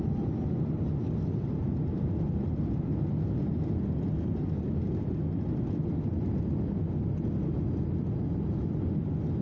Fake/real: real